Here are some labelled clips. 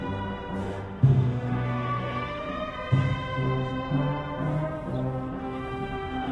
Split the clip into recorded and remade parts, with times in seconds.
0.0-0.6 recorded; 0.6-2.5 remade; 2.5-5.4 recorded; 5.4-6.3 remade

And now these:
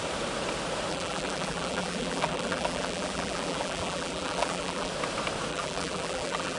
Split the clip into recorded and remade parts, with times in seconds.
0.0-0.9 recorded; 0.9-4.9 remade; 4.9-5.5 recorded; 5.5-6.6 remade

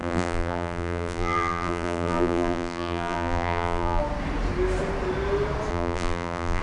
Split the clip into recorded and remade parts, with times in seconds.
0.0-4.0 remade; 4.0-5.7 recorded; 5.7-6.6 remade

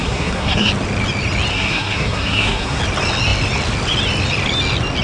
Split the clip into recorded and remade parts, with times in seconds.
0.0-0.7 remade; 0.7-1.5 recorded; 1.5-2.8 remade; 2.8-5.0 recorded

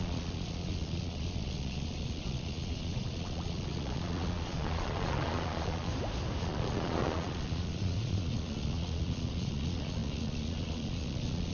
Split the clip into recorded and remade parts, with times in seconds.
0.0-5.9 remade; 5.9-6.4 recorded; 6.4-11.5 remade

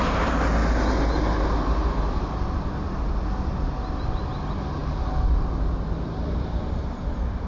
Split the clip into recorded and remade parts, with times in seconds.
0.0-7.5 recorded

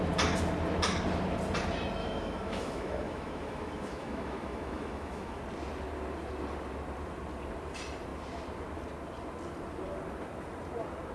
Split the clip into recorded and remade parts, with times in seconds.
0.0-2.0 recorded; 2.0-5.4 remade; 5.4-11.1 recorded